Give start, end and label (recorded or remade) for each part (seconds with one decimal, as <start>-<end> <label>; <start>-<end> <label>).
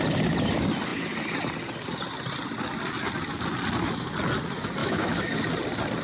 0.0-4.8 recorded; 4.8-5.3 remade; 5.3-6.0 recorded